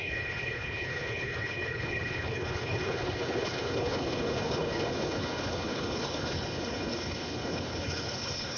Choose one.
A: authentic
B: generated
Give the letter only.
B